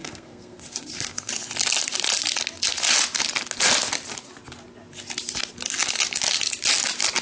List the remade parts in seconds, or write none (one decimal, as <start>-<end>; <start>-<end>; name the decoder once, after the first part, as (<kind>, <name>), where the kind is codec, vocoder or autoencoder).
0.0-1.3 (codec, SNAC)